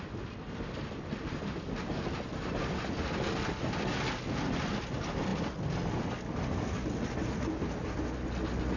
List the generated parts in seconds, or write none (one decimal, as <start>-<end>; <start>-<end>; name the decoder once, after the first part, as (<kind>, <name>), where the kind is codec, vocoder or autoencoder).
none